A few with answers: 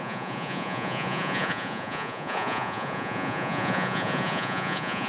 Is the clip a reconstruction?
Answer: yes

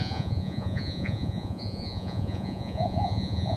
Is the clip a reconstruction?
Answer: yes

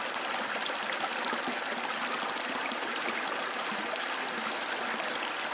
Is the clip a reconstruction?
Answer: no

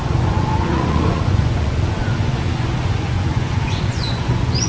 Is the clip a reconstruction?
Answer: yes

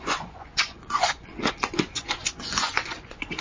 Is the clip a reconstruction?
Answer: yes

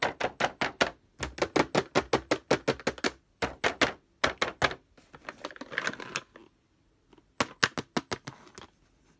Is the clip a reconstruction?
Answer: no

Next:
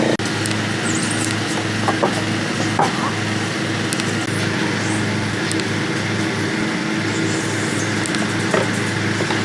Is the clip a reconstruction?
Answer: no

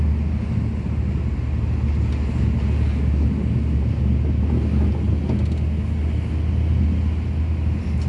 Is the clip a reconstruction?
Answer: no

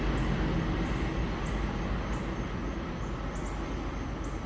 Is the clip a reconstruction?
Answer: no